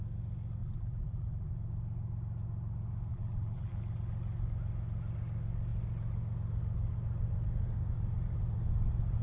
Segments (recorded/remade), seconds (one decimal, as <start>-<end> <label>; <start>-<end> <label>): 0.0-0.6 recorded; 0.6-1.5 remade; 1.5-3.1 recorded; 3.1-3.8 remade; 3.8-9.2 recorded